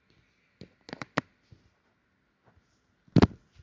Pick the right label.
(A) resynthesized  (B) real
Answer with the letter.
B